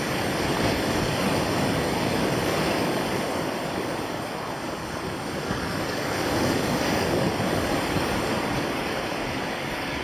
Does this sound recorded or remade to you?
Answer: remade